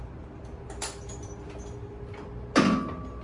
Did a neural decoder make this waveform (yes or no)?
no